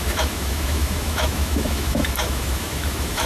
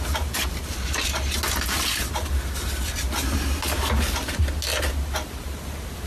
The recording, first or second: second